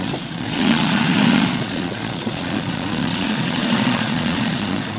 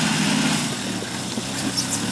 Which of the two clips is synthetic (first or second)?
first